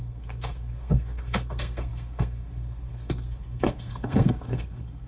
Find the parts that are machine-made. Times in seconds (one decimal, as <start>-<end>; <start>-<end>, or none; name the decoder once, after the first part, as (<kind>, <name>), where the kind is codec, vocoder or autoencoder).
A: 0.0-5.1 (codec, SNAC)